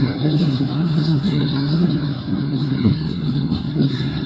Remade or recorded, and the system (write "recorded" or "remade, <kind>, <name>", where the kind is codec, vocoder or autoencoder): remade, codec, SNAC